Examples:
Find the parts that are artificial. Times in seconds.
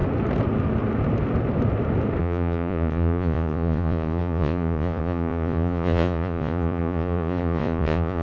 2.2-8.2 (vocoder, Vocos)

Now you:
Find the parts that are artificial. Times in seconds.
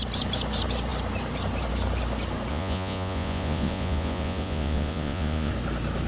2.5-5.5 (vocoder, Vocos)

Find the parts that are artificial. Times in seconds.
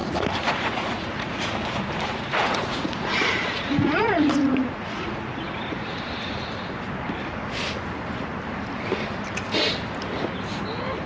0.0-1.5 (vocoder, Vocos); 2.1-5.9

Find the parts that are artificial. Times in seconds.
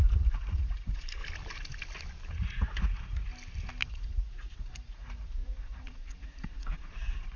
0.0-1.2 (vocoder, Vocos); 2.3-3.3; 3.9-7.4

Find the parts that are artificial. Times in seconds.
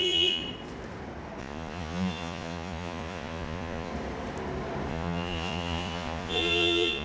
0.0-0.4 (vocoder, Vocos); 1.4-3.9; 4.9-7.0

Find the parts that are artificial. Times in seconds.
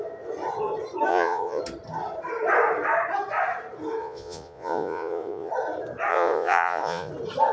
1.1-1.6 (vocoder, Vocos); 4.0-5.5; 6.1-7.1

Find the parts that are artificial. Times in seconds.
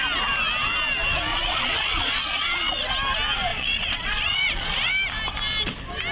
1.3-2.9 (vocoder, Vocos); 3.5-4.9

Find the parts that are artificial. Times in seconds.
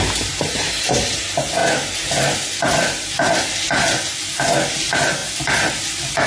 none